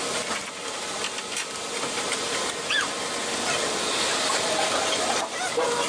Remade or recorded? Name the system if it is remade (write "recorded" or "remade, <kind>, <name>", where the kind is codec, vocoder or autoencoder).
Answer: recorded